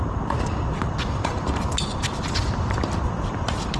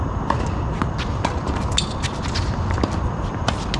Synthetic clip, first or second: first